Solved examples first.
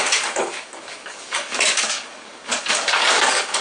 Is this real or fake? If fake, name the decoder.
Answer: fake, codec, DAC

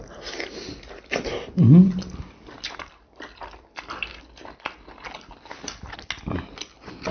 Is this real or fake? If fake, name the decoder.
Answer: real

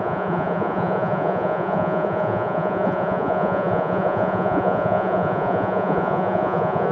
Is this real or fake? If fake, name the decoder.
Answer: fake, vocoder, Vocos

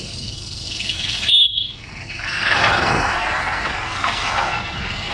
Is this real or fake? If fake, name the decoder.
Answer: fake, codec, SNAC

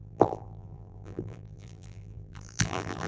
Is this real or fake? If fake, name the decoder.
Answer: fake, vocoder, BigVGAN v2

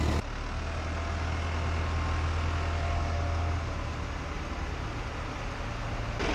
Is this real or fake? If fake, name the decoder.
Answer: real